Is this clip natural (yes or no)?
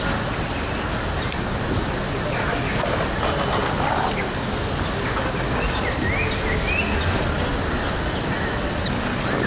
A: yes